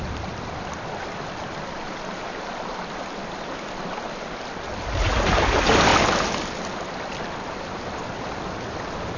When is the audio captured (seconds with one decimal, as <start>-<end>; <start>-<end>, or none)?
0.0-9.2